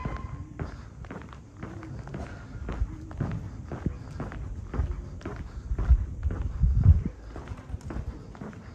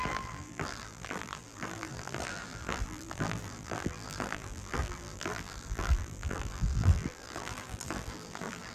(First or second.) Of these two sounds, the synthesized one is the second